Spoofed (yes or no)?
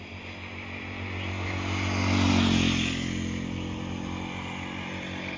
no